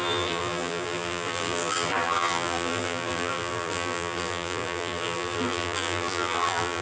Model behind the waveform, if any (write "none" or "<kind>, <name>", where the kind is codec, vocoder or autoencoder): vocoder, BigVGAN v2